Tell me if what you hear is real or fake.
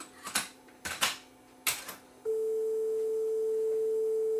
real